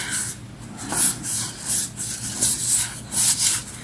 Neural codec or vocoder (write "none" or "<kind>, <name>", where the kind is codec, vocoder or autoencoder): none